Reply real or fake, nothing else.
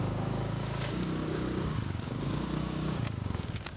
fake